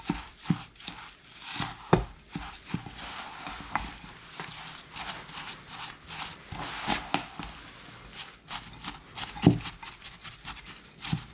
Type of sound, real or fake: real